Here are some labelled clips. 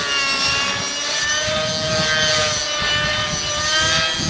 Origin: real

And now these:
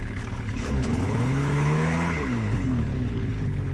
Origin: fake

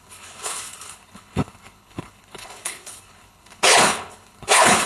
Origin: fake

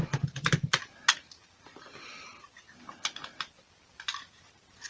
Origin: real